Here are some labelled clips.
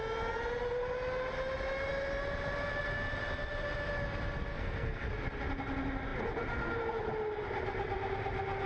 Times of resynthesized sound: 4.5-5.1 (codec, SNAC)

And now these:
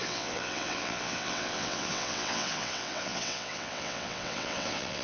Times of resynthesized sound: 0.0-5.0 (vocoder, WaveNeXt)

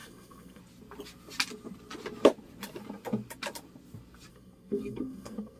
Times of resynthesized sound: 0.0-0.6 (codec, SNAC); 4.3-5.6

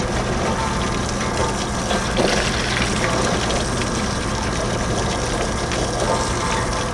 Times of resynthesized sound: none

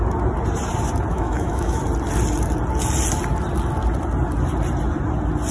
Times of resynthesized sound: 1.1-1.8 (autoencoder, DAC-VAE)

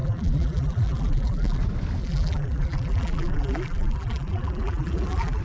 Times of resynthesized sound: 0.0-1.6 (vocoder, BigVGAN v2); 2.0-5.4

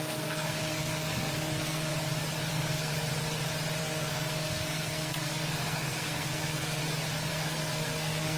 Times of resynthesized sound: 0.0-1.9 (codec, SNAC); 2.5-2.9; 3.8-6.8; 7.3-8.4